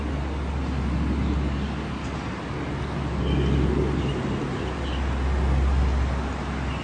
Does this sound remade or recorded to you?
recorded